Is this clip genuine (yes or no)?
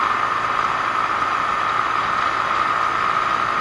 yes